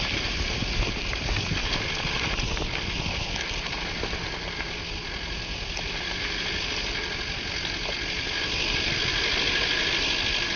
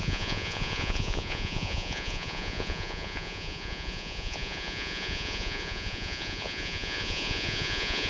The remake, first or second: second